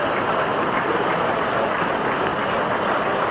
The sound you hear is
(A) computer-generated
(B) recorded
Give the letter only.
B